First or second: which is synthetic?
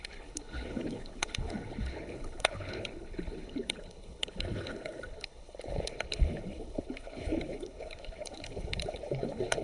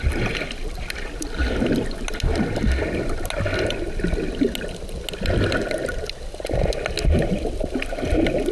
first